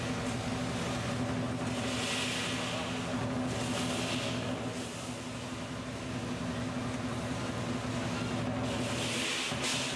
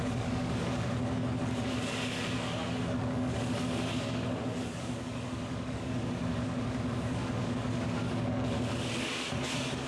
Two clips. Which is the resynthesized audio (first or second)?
second